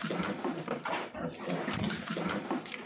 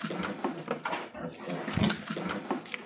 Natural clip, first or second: second